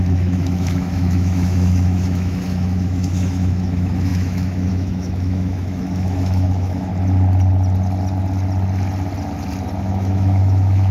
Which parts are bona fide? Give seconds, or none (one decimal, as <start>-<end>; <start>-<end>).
6.9-9.8